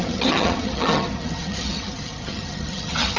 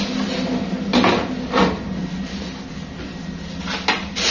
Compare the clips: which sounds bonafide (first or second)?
second